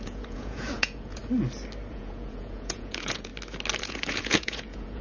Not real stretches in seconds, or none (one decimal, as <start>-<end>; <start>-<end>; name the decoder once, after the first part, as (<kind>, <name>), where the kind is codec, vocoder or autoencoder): 0.0-1.2 (vocoder, Vocos); 1.9-3.3; 3.8-5.0